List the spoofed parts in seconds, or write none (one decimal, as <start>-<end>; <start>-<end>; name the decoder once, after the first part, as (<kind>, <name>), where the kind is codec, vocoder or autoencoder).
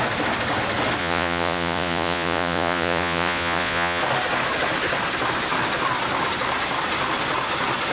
1.0-4.0 (vocoder, Vocos)